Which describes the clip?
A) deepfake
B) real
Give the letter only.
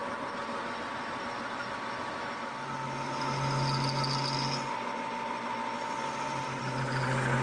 B